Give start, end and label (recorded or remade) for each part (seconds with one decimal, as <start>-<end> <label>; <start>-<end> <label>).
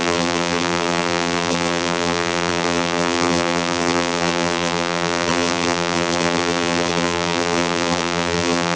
0.0-8.8 remade